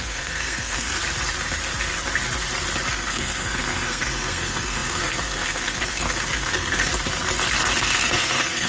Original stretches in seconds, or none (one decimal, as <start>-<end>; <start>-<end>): 1.0-2.9; 6.9-7.8